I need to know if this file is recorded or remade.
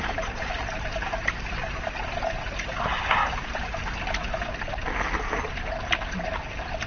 recorded